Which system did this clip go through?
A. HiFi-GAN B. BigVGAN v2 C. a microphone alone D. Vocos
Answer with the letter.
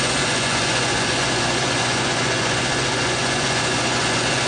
D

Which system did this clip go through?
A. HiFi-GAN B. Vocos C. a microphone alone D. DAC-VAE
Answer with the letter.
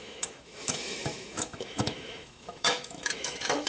D